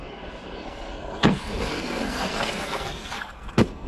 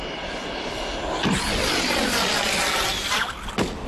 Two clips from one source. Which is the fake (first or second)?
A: first